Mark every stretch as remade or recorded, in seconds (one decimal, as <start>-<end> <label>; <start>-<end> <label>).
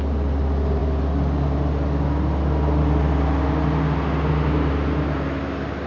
0.0-5.9 recorded